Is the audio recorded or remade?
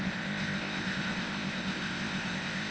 remade